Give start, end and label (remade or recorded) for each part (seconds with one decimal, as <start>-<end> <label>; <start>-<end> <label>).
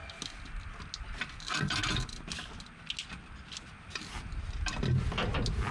0.0-5.7 recorded